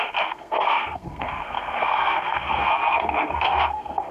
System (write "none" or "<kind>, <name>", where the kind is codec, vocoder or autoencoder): codec, SNAC